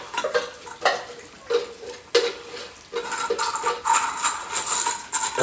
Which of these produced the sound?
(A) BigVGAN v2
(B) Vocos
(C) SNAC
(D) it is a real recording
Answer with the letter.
D